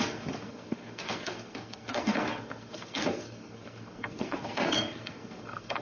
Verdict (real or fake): fake